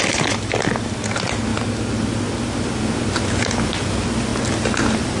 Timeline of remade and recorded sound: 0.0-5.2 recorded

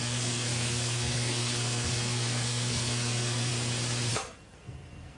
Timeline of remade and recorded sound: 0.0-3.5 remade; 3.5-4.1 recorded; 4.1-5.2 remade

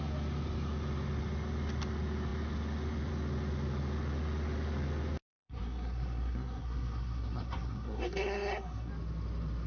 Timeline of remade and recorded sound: 0.0-5.3 recorded; 5.3-8.9 remade; 8.9-9.7 recorded

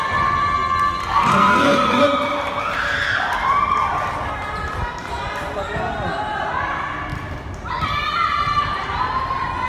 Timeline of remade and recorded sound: 0.0-1.0 recorded; 1.0-2.0 remade; 2.0-9.7 recorded

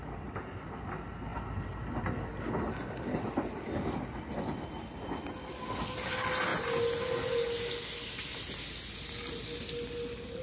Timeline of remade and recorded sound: 0.0-10.4 recorded